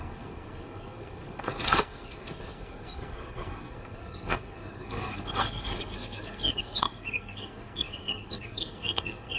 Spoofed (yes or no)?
yes